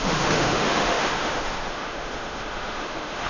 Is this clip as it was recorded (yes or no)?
no